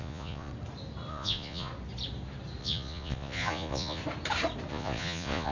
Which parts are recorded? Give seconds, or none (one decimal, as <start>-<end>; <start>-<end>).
0.5-1.1; 1.7-2.6; 4.0-4.7